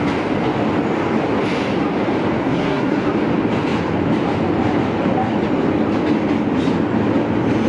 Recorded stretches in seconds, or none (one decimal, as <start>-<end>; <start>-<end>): 0.0-2.4; 3.0-7.7